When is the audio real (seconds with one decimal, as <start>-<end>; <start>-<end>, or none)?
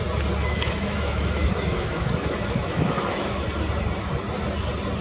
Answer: 0.0-0.4; 3.4-5.0